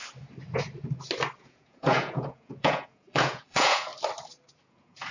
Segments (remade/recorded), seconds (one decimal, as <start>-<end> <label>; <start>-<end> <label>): 0.0-1.4 recorded; 1.4-3.9 remade; 3.9-4.6 recorded; 4.6-5.1 remade